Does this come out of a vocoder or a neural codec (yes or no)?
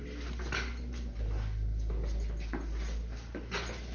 no